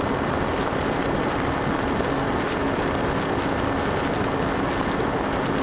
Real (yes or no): yes